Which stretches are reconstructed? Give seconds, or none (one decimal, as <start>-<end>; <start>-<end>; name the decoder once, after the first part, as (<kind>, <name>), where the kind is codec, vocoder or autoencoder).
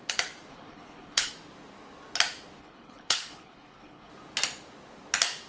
0.5-1.3 (codec, HILCodec); 2.6-4.1